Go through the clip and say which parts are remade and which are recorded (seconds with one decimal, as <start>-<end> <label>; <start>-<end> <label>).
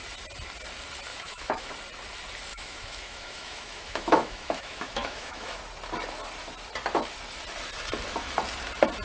0.0-1.1 recorded; 1.1-1.7 remade; 1.7-2.5 recorded; 2.5-5.6 remade; 5.6-9.0 recorded